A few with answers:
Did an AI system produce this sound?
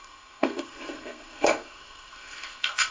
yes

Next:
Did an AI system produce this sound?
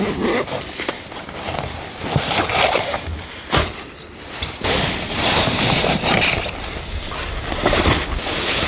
no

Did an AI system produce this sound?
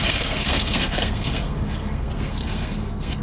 yes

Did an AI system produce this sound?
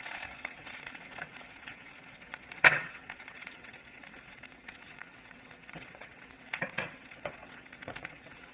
yes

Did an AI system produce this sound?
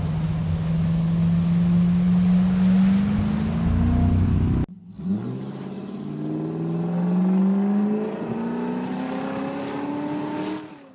no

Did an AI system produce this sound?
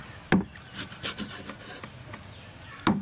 no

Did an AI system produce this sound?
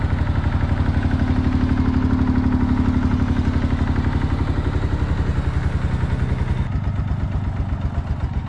no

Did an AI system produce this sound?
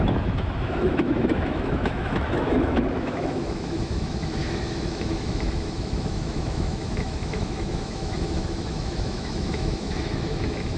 yes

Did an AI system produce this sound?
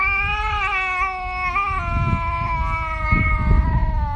no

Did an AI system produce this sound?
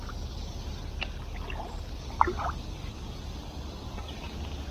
no